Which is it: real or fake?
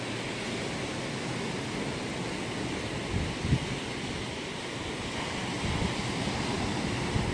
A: real